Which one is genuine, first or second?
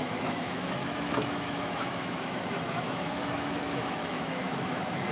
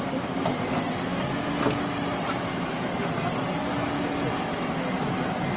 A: second